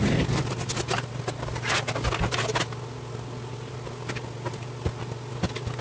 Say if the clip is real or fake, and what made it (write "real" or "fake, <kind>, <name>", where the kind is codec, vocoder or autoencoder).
real